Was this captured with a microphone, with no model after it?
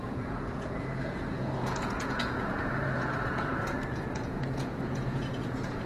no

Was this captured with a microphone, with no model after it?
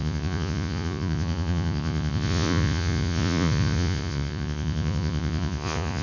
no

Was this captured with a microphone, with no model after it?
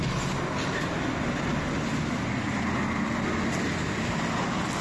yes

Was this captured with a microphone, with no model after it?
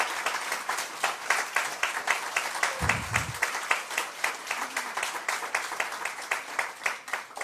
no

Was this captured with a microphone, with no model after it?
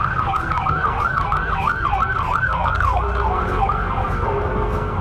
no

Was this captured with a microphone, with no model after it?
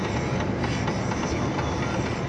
yes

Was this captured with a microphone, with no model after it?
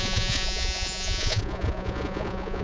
no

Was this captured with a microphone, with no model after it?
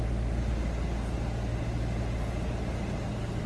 yes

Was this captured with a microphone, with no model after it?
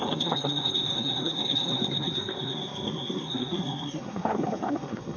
no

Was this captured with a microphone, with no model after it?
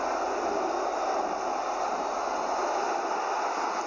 yes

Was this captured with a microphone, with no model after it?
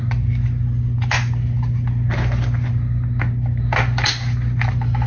yes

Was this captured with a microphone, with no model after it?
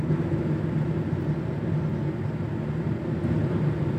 yes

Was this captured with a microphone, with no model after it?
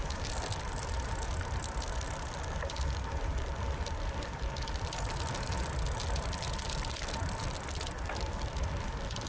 yes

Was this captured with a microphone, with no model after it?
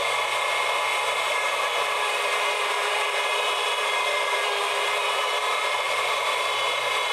no